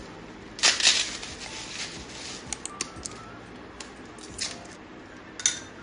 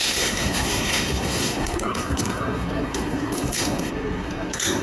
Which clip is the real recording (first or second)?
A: first